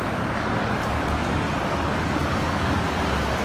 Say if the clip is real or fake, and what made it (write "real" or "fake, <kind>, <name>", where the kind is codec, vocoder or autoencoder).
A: fake, codec, DAC